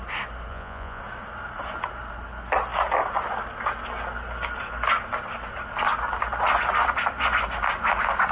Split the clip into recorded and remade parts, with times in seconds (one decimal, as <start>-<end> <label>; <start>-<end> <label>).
0.0-0.5 recorded; 0.5-1.0 remade; 1.0-8.3 recorded